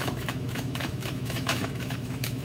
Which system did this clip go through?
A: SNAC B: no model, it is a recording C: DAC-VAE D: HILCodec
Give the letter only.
C